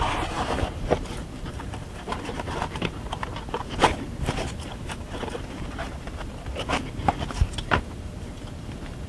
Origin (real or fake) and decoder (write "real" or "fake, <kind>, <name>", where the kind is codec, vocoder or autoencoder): fake, vocoder, BigVGAN v2